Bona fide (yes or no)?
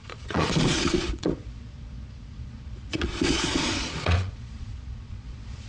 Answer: no